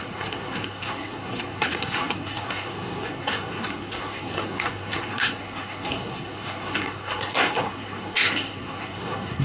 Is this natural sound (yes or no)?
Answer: no